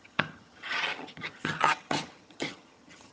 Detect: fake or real fake